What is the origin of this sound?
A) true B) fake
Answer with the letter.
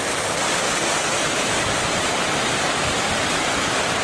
B